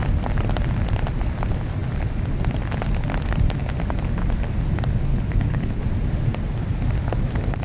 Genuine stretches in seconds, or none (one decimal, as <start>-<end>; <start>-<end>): 0.0-5.1; 5.8-7.6